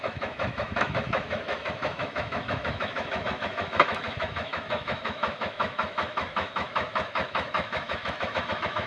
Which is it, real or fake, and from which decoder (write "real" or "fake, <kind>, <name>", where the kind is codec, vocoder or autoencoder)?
fake, autoencoder, DAC-VAE